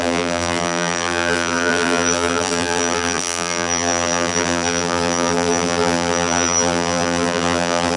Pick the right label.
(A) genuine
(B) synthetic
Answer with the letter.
B